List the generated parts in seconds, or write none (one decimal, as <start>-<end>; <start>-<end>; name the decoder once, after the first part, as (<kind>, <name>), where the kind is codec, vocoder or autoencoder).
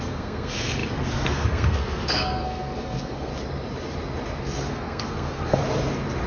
0.0-3.3 (codec, SNAC); 4.4-5.6